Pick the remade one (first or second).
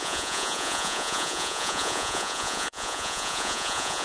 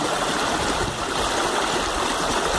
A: first